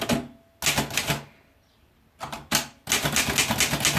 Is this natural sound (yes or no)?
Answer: yes